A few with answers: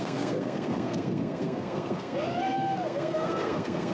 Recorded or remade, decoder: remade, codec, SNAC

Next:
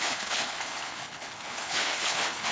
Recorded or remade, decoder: remade, codec, HILCodec